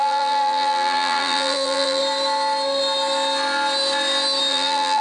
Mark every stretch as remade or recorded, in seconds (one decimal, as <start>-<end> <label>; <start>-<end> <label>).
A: 0.0-2.0 remade; 2.0-4.5 recorded; 4.5-5.0 remade